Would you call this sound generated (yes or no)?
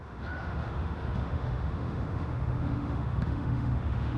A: yes